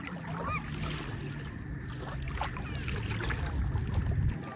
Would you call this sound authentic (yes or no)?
yes